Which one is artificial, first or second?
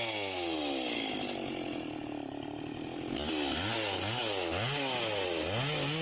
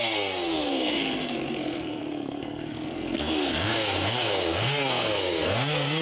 second